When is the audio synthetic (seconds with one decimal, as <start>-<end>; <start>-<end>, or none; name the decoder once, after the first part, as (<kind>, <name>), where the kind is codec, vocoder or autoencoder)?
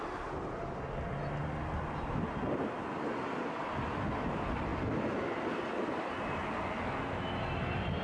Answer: none